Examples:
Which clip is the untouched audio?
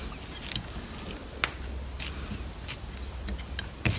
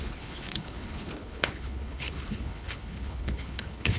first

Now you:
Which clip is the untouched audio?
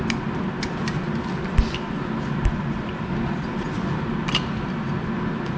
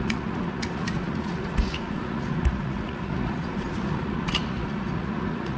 first